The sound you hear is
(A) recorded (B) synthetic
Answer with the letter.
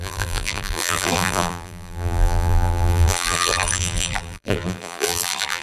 B